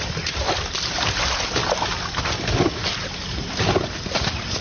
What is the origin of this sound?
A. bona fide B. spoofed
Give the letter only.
A